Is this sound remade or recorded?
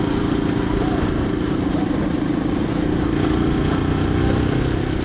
recorded